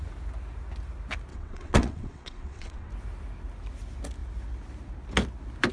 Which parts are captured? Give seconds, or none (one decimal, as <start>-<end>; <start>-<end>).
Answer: 0.0-1.3; 2.9-5.7